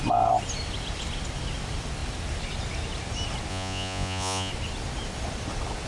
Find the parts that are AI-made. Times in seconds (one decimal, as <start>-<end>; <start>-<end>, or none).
3.5-4.5